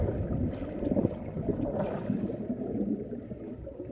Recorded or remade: recorded